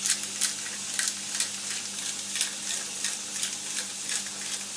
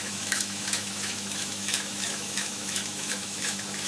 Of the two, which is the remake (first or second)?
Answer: second